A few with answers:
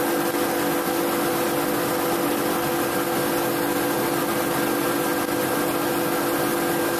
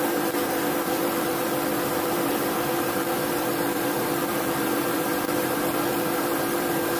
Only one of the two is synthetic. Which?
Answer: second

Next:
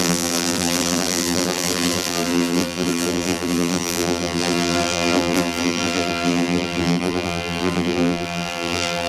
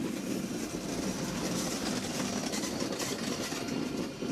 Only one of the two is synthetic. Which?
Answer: first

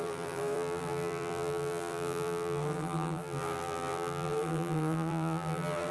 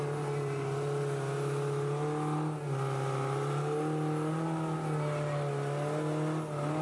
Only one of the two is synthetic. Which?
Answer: first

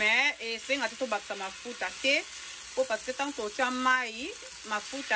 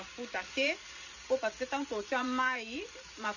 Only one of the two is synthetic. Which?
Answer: second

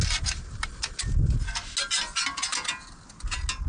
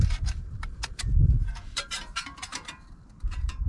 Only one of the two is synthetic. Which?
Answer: second